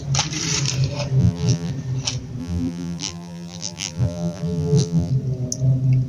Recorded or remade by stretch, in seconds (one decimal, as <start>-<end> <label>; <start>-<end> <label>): 0.0-1.2 recorded; 1.2-1.7 remade; 1.7-2.4 recorded; 2.4-5.1 remade; 5.1-6.1 recorded